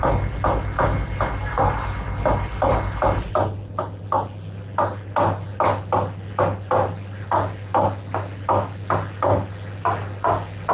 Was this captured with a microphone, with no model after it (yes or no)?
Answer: yes